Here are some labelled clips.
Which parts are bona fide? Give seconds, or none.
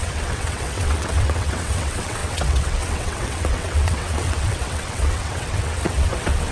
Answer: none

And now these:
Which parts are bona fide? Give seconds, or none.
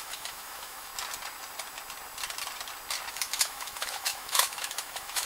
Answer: 0.9-3.1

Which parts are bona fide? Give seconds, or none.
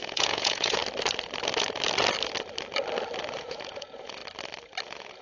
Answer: 0.8-3.2; 4.2-4.8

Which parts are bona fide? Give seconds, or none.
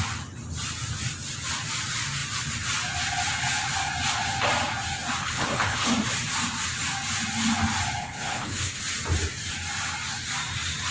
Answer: 0.0-5.2; 5.9-8.0; 8.8-10.9